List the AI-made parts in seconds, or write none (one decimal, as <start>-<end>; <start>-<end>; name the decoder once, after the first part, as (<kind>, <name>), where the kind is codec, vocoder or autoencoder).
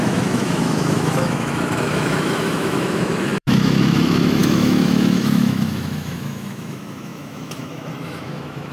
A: 0.0-8.7 (autoencoder, DAC-VAE)